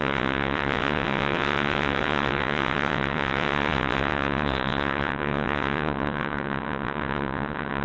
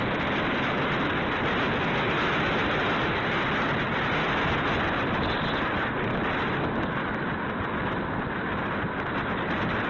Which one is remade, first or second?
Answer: first